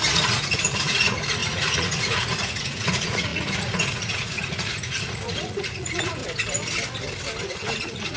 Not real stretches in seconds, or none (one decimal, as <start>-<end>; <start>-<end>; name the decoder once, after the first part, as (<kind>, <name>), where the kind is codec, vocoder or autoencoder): 0.0-6.2 (vocoder, Vocos); 7.4-8.2